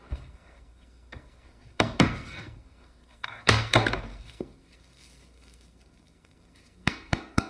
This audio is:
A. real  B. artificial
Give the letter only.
B